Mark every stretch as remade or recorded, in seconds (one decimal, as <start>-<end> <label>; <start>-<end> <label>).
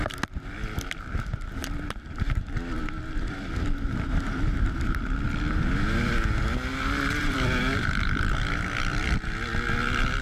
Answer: 0.0-1.6 recorded; 1.6-2.2 remade; 2.2-2.8 recorded; 2.8-3.5 remade; 3.5-6.7 recorded; 6.7-7.8 remade; 7.8-10.2 recorded